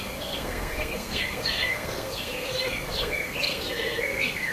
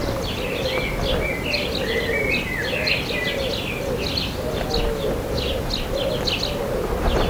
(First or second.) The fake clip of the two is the first